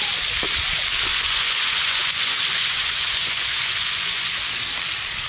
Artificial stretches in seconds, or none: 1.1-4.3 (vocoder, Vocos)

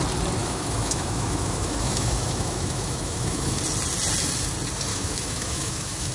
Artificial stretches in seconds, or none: 0.4-3.6 (autoencoder, DAC-VAE); 4.9-6.1

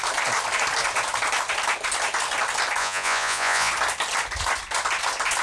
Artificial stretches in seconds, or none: 2.8-3.7 (vocoder, Vocos)

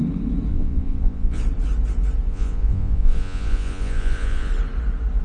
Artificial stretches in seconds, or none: 0.5-1.4 (vocoder, Vocos); 2.3-4.5

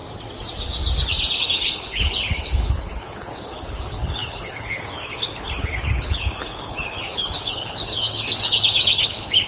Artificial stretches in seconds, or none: 1.4-9.5 (codec, HILCodec)

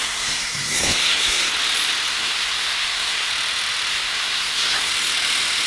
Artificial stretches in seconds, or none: 0.0-1.5 (codec, SNAC); 2.1-3.3; 3.9-4.9

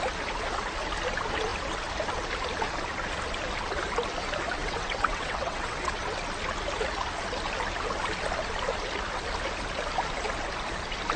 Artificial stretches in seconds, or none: 4.6-6.0 (vocoder, WaveNeXt)